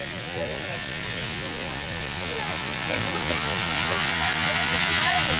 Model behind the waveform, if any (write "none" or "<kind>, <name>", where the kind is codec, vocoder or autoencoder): vocoder, Vocos